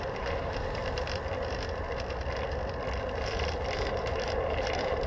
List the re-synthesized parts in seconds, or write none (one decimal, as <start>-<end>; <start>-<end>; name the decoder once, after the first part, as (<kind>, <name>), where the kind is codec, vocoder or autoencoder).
0.0-0.8 (vocoder, BigVGAN v2); 3.0-5.1